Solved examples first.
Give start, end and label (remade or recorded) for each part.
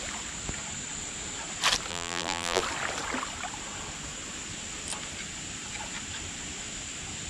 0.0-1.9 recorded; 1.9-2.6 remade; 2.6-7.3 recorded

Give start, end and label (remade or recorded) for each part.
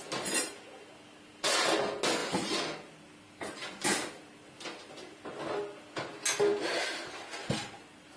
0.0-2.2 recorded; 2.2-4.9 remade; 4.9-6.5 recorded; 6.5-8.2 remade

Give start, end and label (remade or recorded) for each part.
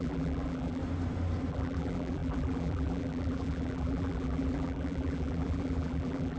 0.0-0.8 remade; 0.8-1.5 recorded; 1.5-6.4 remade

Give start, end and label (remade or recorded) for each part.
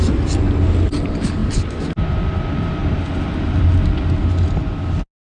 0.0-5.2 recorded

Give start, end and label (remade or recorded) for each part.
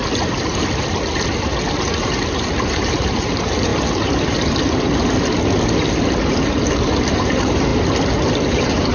0.0-2.6 recorded; 2.6-3.7 remade; 3.7-7.1 recorded; 7.1-7.7 remade; 7.7-8.5 recorded; 8.5-8.9 remade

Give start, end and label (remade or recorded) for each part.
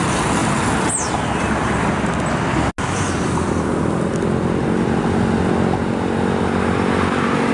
0.0-0.4 recorded; 0.4-1.8 remade; 1.8-7.5 recorded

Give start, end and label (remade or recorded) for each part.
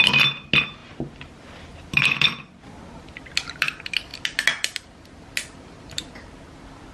0.0-0.8 recorded; 0.8-2.6 remade; 2.6-6.9 recorded